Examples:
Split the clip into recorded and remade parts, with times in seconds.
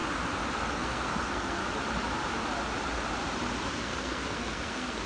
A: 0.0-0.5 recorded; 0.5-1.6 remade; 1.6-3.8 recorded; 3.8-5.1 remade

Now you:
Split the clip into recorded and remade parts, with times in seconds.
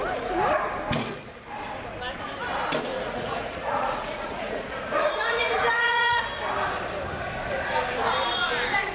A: 0.0-2.9 recorded; 2.9-6.2 remade; 6.2-8.9 recorded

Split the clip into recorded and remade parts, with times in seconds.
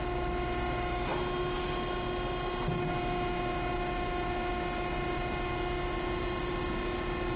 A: 0.0-7.4 recorded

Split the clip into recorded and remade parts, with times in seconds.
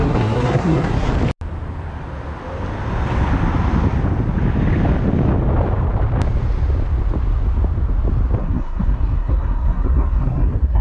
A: 0.0-1.1 remade; 1.1-8.4 recorded; 8.4-10.8 remade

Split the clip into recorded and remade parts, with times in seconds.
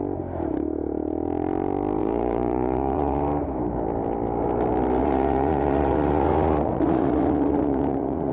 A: 0.0-2.0 recorded; 2.0-3.2 remade; 3.2-5.0 recorded; 5.0-8.3 remade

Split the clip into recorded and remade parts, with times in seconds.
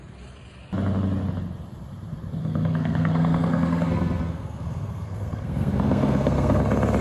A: 0.0-2.4 recorded; 2.4-6.6 remade; 6.6-7.0 recorded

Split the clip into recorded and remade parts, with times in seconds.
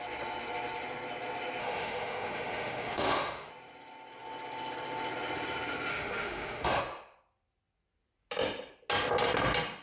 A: 0.0-1.6 recorded; 1.6-3.5 remade; 3.5-5.9 recorded; 5.9-6.8 remade; 6.8-9.8 recorded